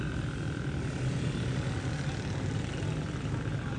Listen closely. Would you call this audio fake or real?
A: real